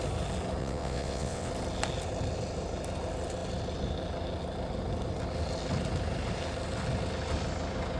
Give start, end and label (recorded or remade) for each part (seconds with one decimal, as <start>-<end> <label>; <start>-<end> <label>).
0.0-0.6 recorded; 0.6-1.5 remade; 1.5-8.0 recorded